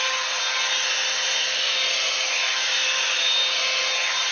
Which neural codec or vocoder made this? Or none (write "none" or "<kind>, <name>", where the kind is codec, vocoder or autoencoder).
none